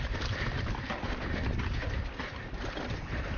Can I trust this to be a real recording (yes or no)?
yes